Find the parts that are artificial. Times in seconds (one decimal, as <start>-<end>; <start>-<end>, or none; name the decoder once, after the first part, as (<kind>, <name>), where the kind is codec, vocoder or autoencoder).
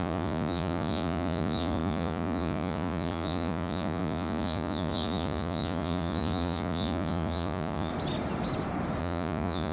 0.0-7.9 (vocoder, Vocos); 9.0-9.7